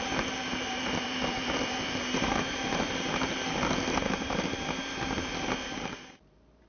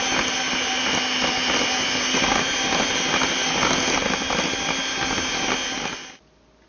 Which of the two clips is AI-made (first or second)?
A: first